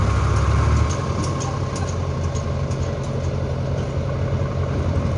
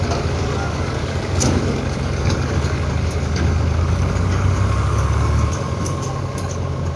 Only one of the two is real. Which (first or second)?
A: first